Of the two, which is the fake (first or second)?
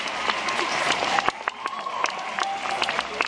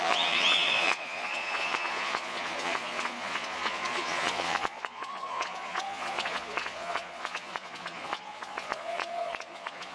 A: second